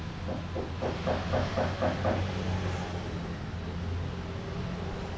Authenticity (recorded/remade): recorded